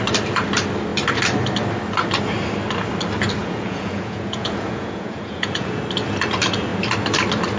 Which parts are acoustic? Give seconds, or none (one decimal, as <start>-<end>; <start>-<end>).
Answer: 0.0-3.4; 5.8-7.6